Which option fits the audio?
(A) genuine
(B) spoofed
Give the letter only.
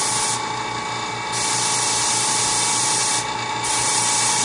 A